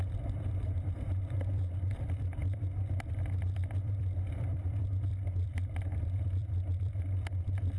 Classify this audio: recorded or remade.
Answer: remade